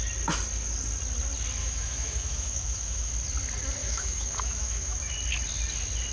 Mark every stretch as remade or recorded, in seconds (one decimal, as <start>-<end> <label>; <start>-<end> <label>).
0.0-1.6 recorded; 1.6-3.1 remade; 3.1-3.8 recorded; 3.8-5.1 remade; 5.1-6.1 recorded